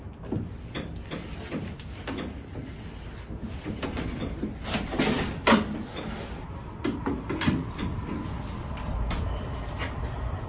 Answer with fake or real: real